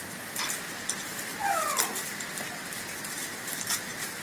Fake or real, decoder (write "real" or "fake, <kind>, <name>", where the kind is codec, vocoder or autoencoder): real